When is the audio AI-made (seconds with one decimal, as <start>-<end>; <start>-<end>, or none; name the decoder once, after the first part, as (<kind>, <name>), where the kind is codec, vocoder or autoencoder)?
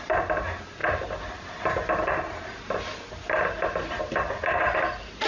none